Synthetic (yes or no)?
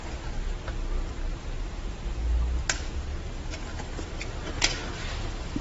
no